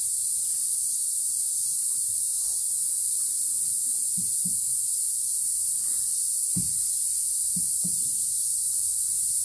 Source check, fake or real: real